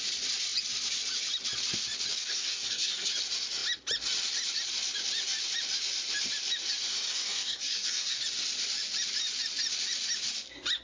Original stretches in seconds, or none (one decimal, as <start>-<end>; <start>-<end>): 0.0-2.1; 3.1-6.9; 8.2-10.8